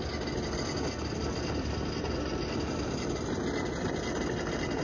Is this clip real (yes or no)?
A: yes